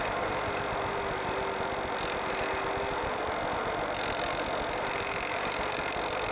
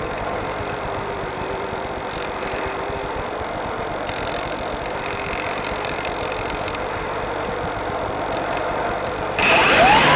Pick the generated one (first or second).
second